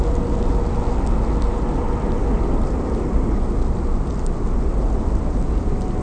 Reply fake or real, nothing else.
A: real